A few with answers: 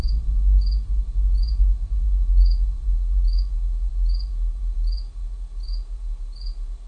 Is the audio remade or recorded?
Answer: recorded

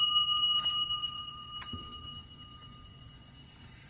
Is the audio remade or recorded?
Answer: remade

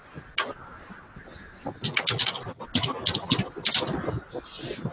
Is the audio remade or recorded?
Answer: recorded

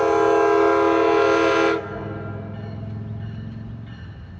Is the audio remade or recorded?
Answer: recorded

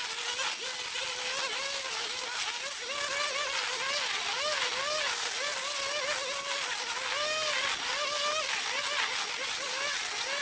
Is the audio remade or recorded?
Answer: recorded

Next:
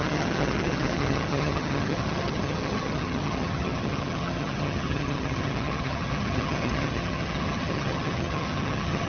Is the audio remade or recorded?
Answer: remade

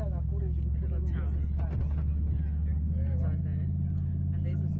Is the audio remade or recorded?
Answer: recorded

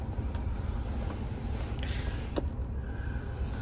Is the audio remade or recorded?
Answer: recorded